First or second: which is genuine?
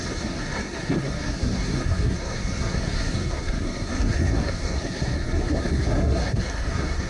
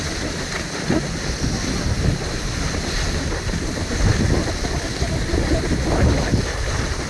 second